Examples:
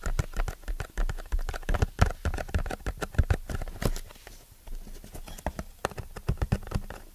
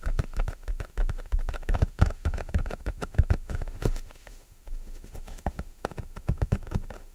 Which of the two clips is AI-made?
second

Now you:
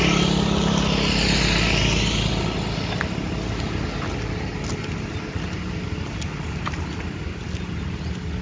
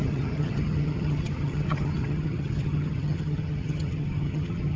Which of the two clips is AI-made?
second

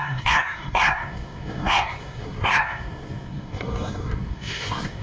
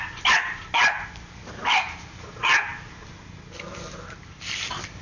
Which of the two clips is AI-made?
first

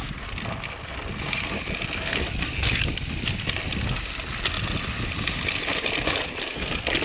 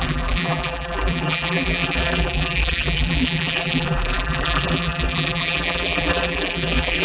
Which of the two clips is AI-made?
second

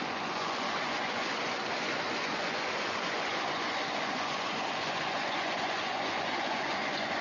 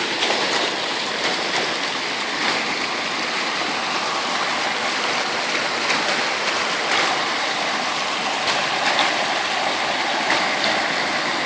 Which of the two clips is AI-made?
first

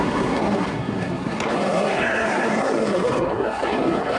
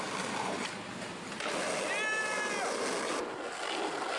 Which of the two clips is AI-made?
first